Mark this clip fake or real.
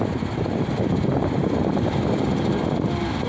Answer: real